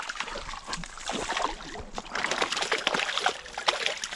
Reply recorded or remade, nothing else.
recorded